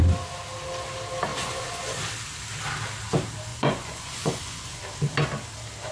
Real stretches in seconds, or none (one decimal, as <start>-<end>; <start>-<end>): 0.0-1.3; 2.0-3.5; 4.8-5.9